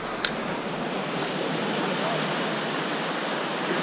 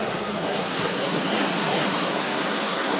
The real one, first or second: first